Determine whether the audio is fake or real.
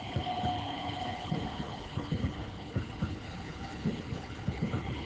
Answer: fake